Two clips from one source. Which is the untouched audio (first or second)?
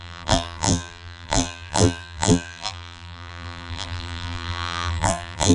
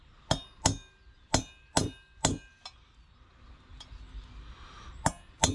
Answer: second